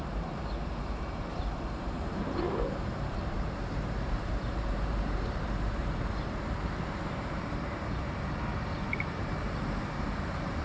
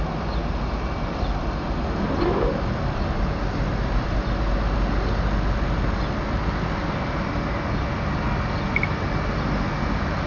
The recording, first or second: second